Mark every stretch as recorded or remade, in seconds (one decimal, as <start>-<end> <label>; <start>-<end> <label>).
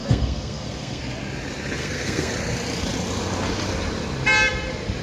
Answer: 0.0-1.0 remade; 1.0-1.8 recorded; 1.8-2.3 remade; 2.3-5.0 recorded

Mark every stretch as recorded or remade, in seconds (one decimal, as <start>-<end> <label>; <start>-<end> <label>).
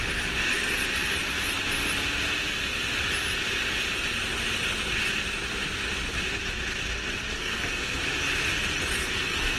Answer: 0.0-7.4 recorded; 7.4-8.0 remade; 8.0-9.0 recorded; 9.0-9.6 remade